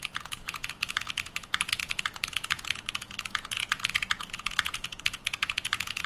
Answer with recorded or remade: remade